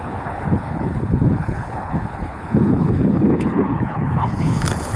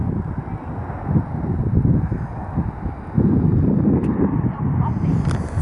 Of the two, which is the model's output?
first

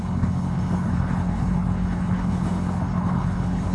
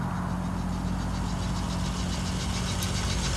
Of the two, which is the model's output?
first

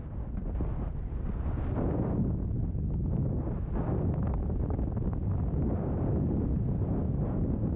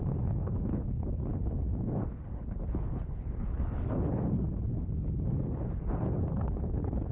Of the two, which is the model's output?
second